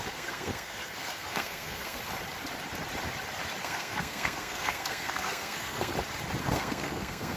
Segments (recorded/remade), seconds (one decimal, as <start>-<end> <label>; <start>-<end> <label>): 0.0-2.0 remade; 2.0-3.6 recorded; 3.6-5.9 remade; 5.9-6.4 recorded; 6.4-7.4 remade